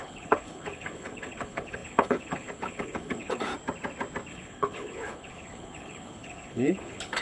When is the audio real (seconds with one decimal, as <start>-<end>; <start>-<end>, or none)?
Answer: 3.5-4.3